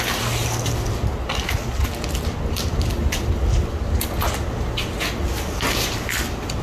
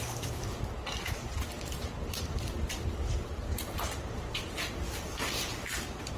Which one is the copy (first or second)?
second